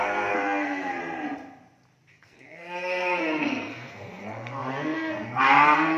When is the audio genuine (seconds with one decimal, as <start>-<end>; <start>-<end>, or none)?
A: 1.0-2.1